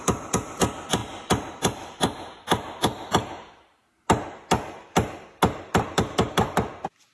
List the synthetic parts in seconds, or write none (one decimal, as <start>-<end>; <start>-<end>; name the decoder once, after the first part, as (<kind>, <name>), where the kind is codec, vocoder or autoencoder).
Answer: none